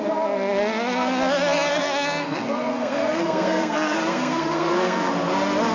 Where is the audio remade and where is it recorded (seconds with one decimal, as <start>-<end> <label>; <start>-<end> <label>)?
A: 0.0-1.7 recorded; 1.7-5.1 remade; 5.1-5.7 recorded